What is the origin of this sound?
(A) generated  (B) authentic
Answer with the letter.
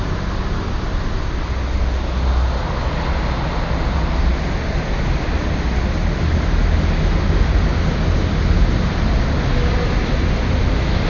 B